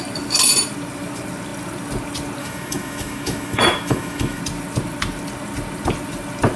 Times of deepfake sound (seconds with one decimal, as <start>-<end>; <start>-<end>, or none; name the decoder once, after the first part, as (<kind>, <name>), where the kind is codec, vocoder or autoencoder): 2.4-4.4 (autoencoder, DAC-VAE)